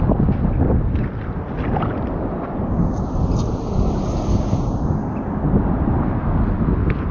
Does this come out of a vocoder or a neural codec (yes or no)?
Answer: no